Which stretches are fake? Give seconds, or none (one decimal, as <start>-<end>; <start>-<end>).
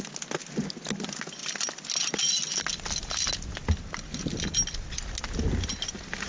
none